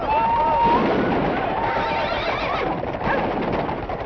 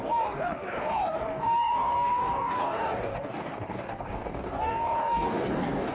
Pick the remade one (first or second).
second